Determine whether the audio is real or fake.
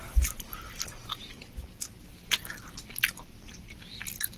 real